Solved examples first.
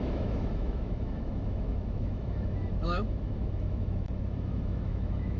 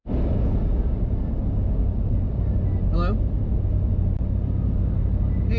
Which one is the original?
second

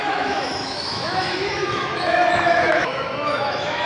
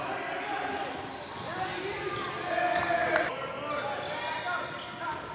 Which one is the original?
second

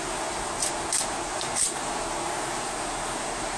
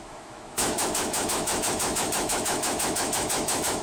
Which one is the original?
first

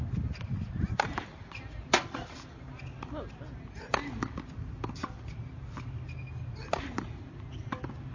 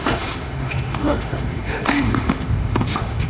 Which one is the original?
first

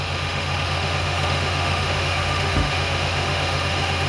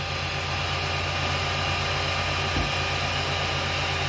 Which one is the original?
second